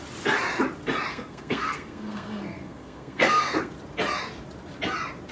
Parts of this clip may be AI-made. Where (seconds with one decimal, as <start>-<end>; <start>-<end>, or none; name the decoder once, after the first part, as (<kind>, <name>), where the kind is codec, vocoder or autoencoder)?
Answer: 1.1-3.7 (codec, SNAC)